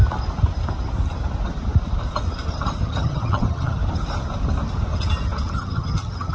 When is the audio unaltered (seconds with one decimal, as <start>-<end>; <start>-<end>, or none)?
0.0-2.8; 3.8-5.5